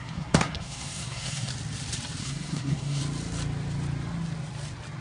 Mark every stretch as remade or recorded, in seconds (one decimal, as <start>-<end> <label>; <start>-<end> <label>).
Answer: 0.0-1.5 remade; 1.5-2.2 recorded; 2.2-3.0 remade; 3.0-5.0 recorded